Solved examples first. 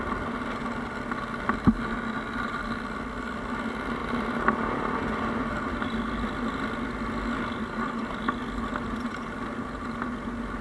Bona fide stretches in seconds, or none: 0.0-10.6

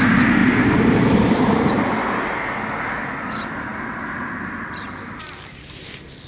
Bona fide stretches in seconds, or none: 0.0-0.4; 1.7-6.3

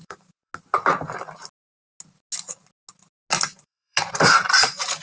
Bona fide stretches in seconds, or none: 0.5-3.5

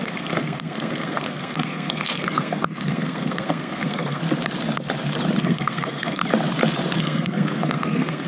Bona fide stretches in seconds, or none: 4.2-5.4; 6.2-7.0

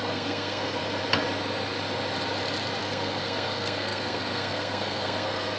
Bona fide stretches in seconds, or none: 0.8-2.8

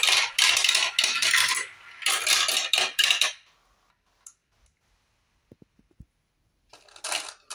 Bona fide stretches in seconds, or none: 0.8-2.7; 4.4-7.5

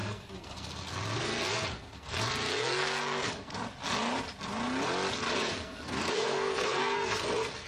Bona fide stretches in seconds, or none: 3.5-5.4

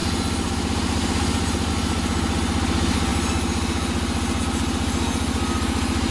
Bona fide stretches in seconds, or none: 0.0-6.1